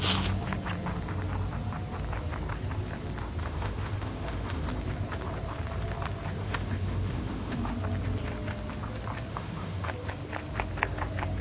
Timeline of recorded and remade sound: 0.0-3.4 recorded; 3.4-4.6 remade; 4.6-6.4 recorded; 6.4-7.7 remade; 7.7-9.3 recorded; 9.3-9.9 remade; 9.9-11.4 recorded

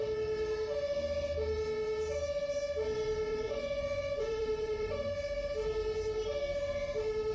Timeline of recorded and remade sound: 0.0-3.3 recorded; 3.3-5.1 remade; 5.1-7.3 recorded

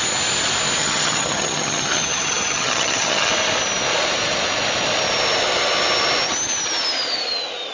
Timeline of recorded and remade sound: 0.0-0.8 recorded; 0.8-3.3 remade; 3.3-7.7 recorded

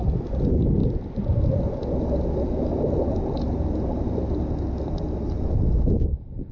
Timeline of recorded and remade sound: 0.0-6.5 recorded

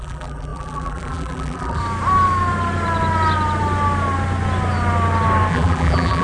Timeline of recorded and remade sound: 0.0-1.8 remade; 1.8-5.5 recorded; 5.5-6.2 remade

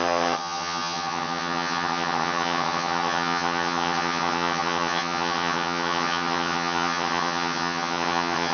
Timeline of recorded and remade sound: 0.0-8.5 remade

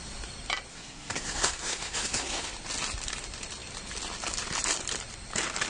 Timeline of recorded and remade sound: 0.0-0.7 recorded; 0.7-2.5 remade; 2.5-5.7 recorded